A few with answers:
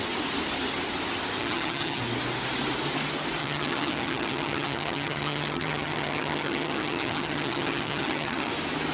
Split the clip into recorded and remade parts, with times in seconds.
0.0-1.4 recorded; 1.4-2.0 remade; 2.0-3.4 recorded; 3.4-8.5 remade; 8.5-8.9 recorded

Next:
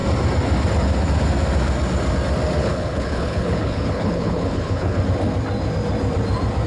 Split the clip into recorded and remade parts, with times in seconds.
0.0-2.6 recorded; 2.6-5.0 remade; 5.0-6.7 recorded

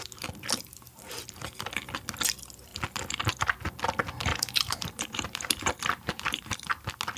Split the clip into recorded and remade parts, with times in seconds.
0.0-4.3 recorded; 4.3-6.7 remade; 6.7-7.2 recorded

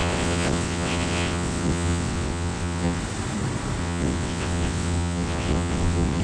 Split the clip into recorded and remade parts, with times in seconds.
0.0-3.0 remade; 3.0-3.8 recorded; 3.8-6.2 remade

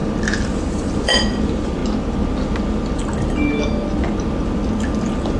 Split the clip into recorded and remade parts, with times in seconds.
0.0-1.8 remade; 1.8-5.0 recorded; 5.0-5.4 remade

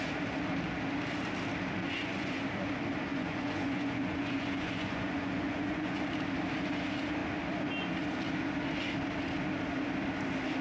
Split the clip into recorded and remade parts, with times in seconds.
0.0-1.8 recorded; 1.8-2.4 remade; 2.4-3.1 recorded; 3.1-6.0 remade; 6.0-10.6 recorded

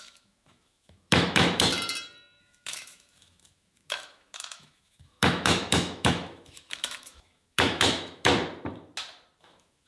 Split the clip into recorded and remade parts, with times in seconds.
0.0-1.7 remade; 1.7-2.4 recorded; 2.4-8.3 remade; 8.3-9.4 recorded; 9.4-9.9 remade

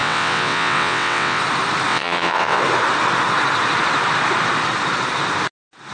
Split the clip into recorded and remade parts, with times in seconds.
0.0-1.4 remade; 1.4-1.9 recorded; 1.9-2.6 remade; 2.6-5.9 recorded